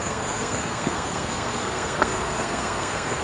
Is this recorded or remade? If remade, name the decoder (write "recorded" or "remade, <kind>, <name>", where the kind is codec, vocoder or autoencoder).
remade, codec, SNAC